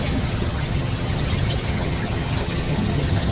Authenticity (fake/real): fake